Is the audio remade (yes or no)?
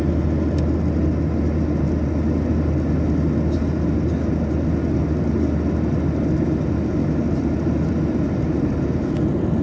no